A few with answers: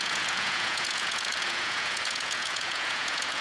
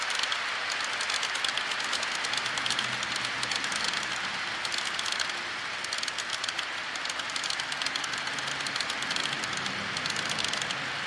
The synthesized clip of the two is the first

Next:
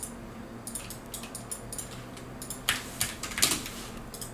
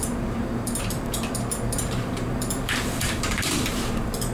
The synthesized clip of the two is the second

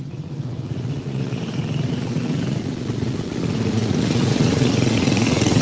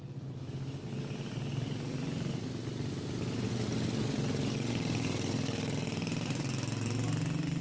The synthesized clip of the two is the first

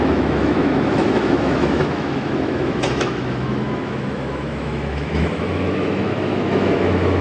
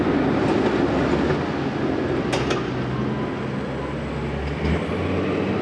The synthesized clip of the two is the first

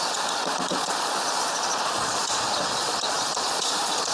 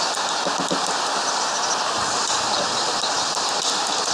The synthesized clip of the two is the first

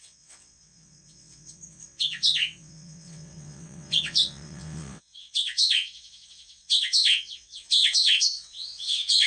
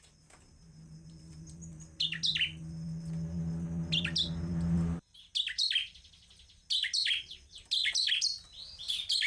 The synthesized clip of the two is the first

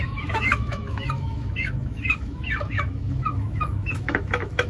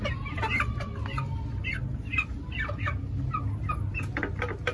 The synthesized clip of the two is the first